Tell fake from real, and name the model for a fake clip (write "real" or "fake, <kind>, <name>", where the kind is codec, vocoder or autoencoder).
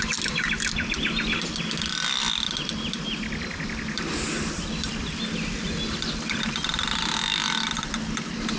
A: real